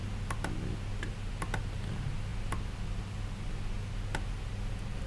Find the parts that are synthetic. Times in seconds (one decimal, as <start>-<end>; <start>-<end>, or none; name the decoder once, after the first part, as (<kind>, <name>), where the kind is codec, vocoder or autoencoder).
none